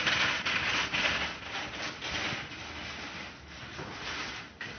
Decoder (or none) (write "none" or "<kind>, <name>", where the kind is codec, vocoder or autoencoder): none